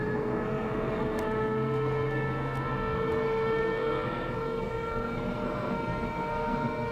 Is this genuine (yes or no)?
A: no